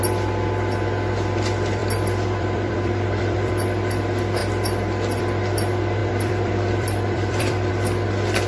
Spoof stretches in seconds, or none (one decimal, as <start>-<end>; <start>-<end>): 1.8-3.5; 6.0-7.7